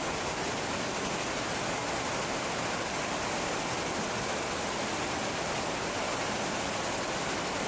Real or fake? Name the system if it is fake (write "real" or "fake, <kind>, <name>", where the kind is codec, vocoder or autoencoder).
real